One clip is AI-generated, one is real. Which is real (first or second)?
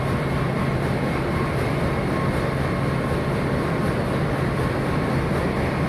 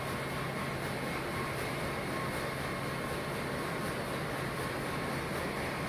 second